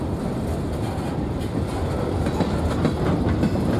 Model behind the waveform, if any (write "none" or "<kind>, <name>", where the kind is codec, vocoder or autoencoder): none